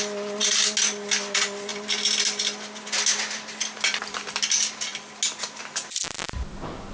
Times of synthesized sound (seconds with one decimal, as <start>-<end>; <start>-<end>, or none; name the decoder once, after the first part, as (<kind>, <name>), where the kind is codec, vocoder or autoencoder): none